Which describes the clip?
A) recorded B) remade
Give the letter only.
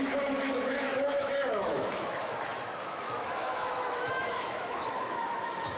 B